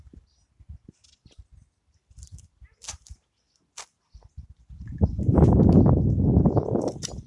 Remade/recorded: recorded